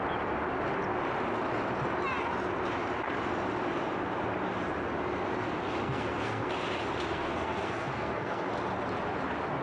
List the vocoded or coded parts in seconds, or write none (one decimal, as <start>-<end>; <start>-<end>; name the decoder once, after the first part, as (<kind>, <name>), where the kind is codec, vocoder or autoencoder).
5.8-6.5 (codec, SNAC); 7.1-8.5